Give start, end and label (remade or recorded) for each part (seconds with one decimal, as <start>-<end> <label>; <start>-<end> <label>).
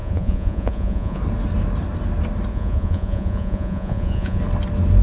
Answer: 0.0-1.2 remade; 1.2-2.5 recorded; 2.5-4.4 remade; 4.4-5.0 recorded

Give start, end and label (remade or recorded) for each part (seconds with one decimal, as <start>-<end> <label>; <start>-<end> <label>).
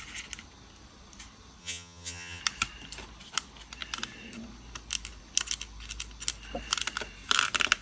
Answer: 0.0-1.6 recorded; 1.6-2.4 remade; 2.4-7.8 recorded